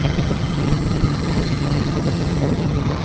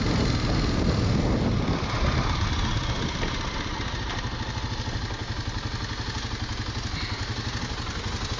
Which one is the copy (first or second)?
first